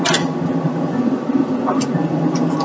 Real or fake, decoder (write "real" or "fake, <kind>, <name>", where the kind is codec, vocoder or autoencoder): real